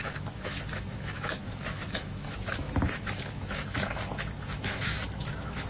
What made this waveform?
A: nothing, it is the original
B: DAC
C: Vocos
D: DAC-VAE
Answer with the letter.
D